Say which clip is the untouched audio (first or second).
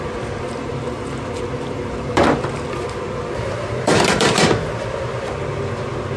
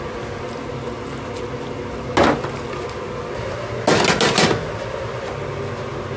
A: second